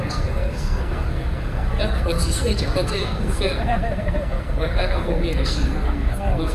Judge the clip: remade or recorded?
remade